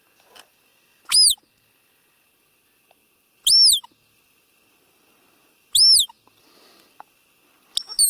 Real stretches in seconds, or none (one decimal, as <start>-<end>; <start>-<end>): 0.0-8.1